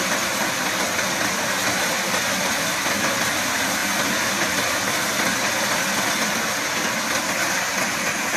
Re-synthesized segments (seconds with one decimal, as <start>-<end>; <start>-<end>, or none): none